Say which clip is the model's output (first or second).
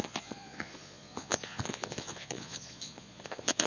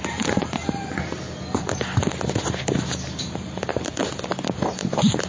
first